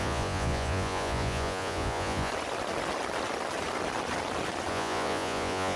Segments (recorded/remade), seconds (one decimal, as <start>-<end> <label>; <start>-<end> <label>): 0.0-2.3 remade; 2.3-4.7 recorded; 4.7-5.8 remade